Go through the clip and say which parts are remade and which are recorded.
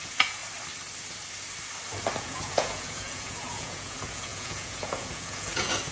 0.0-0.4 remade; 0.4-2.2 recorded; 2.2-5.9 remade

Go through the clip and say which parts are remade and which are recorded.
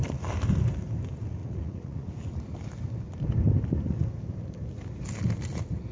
0.0-1.4 recorded; 1.4-2.1 remade; 2.1-5.9 recorded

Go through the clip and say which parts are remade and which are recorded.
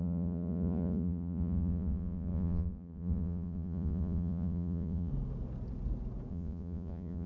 0.0-5.1 remade; 5.1-6.3 recorded; 6.3-7.3 remade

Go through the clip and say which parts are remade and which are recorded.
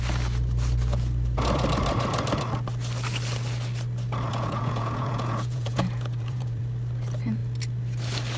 0.0-4.3 recorded; 4.3-6.6 remade; 6.6-8.4 recorded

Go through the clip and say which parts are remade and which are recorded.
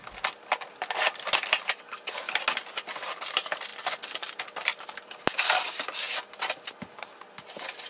0.0-7.9 recorded